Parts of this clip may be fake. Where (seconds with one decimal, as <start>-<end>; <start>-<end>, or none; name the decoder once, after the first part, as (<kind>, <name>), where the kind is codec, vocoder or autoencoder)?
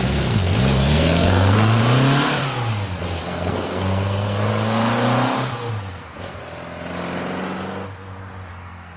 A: 0.0-1.8 (codec, SNAC); 3.2-4.5; 5.7-6.4; 8.5-9.0